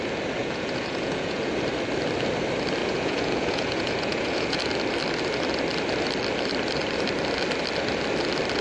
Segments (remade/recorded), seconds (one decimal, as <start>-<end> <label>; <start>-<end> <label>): 0.0-0.4 recorded; 0.4-1.5 remade; 1.5-2.8 recorded; 2.8-4.6 remade; 4.6-8.6 recorded